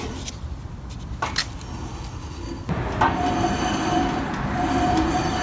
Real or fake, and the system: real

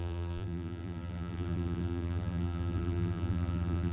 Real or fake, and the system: fake, vocoder, BigVGAN v2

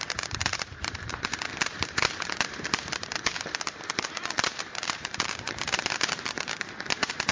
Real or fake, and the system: fake, vocoder, BigVGAN v2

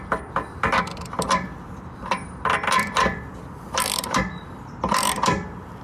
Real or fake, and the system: fake, vocoder, BigVGAN v2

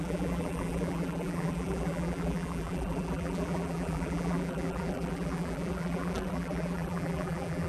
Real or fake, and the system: fake, vocoder, BigVGAN v2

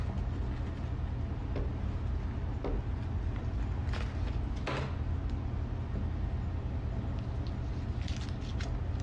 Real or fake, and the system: real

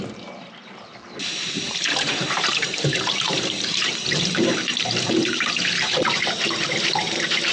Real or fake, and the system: fake, vocoder, BigVGAN v2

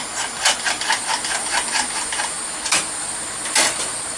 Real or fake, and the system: real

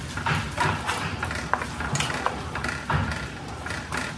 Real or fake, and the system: real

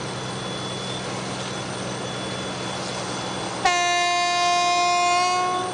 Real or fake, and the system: real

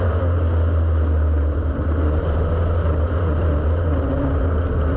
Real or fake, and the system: real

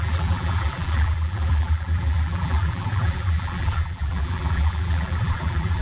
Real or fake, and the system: fake, vocoder, BigVGAN v2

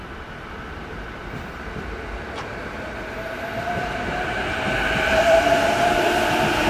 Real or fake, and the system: fake, vocoder, BigVGAN v2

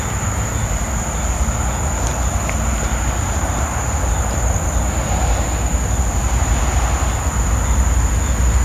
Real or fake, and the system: real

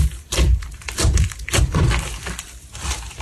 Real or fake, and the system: fake, vocoder, BigVGAN v2